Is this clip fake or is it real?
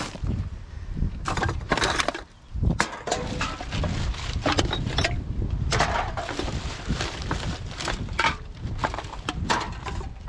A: fake